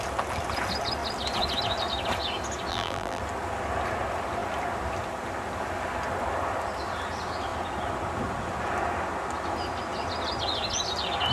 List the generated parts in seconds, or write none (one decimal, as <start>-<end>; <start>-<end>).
2.7-3.2